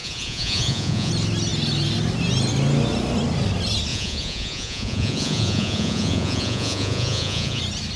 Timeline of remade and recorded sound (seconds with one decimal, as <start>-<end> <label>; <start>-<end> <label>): 0.0-1.1 remade; 1.1-3.9 recorded; 3.9-7.6 remade; 7.6-8.0 recorded